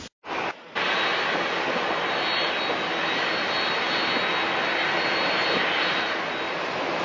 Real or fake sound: real